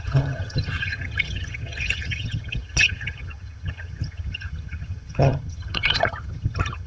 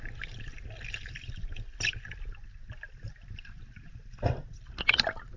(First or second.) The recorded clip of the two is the second